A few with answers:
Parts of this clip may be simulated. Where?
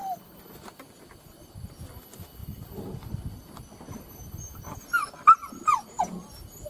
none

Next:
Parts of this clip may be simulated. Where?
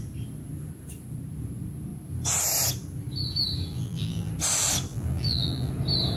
3.7-4.3 (vocoder, BigVGAN v2); 4.9-5.7